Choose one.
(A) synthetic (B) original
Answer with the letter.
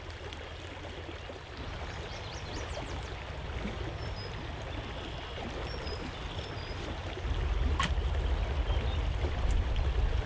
B